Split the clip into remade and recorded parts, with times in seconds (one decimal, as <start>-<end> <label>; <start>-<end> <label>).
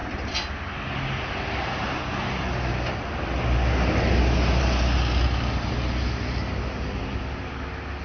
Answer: 0.0-8.0 recorded